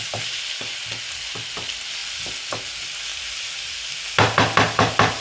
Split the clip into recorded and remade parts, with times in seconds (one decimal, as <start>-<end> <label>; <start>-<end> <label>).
0.0-5.2 recorded